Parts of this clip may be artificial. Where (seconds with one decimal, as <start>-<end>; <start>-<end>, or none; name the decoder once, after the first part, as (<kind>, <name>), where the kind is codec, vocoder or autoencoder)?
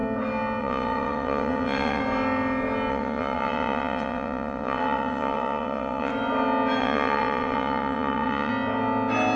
0.6-2.0 (vocoder, WaveNeXt); 2.9-6.1; 6.8-8.5